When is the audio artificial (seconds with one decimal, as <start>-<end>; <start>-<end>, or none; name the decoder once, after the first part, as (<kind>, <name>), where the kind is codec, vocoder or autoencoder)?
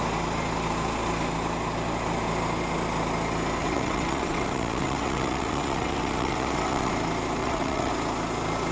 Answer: 3.6-6.9 (vocoder, WaveNeXt); 7.4-7.9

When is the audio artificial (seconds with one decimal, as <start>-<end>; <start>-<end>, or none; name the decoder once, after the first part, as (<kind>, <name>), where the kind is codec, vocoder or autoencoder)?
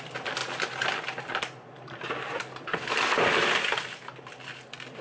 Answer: none